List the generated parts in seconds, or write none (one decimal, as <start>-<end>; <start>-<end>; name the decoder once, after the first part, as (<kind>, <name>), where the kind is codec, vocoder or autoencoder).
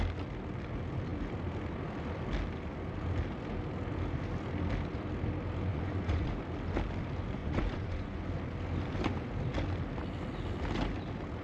5.7-6.4 (vocoder, Vocos); 7.4-8.2